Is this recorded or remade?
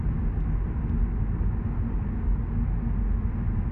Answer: recorded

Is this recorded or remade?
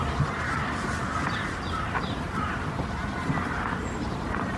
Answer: remade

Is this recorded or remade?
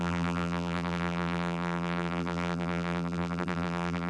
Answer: remade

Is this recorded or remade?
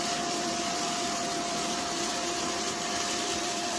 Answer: remade